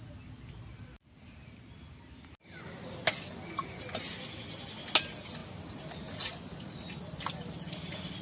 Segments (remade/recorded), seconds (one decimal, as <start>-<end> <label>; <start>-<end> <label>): 0.0-8.2 recorded